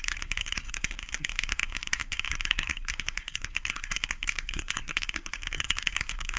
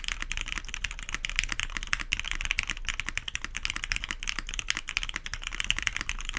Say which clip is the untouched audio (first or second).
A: second